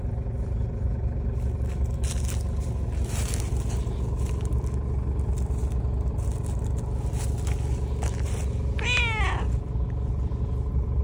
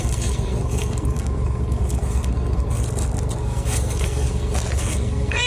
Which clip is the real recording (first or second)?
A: first